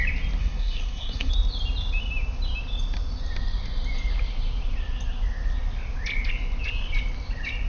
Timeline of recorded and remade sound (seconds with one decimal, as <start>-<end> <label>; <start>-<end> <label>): 0.0-0.4 recorded; 0.4-1.3 remade; 1.3-7.7 recorded